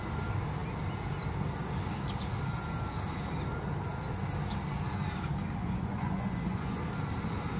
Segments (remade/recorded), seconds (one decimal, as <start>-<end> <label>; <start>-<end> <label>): 0.0-5.6 recorded; 5.6-6.8 remade; 6.8-7.6 recorded